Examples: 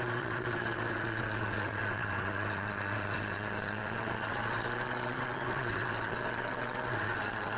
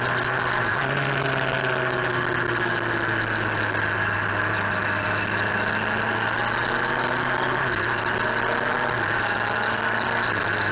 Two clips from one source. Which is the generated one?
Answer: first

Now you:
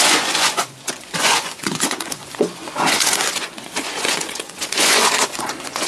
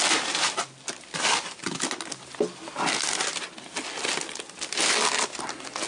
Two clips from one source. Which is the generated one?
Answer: first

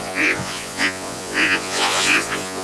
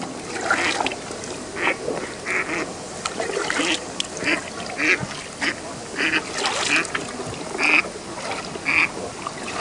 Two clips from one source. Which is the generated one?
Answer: first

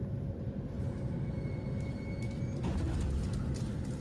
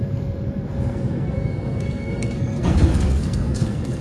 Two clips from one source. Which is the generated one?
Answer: second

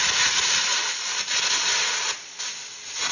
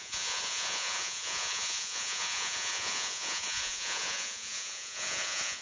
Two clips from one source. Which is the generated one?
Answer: second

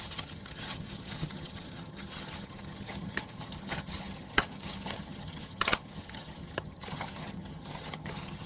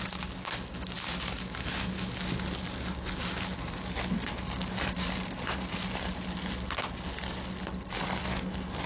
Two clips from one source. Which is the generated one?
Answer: first